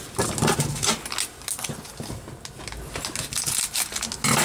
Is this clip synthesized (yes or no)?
no